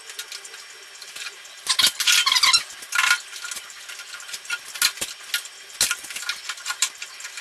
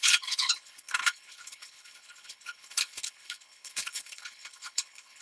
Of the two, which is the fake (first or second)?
second